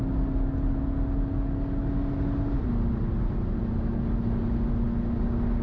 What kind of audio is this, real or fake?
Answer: real